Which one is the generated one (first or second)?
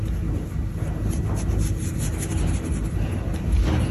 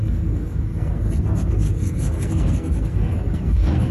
second